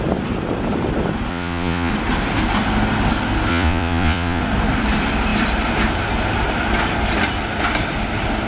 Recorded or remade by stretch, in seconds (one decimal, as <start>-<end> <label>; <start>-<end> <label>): 0.0-1.3 recorded; 1.3-1.9 remade; 1.9-3.5 recorded; 3.5-4.4 remade; 4.4-8.5 recorded